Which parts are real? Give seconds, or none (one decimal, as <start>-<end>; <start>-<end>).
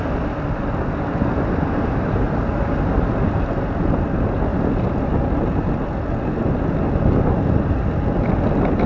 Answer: 0.0-8.9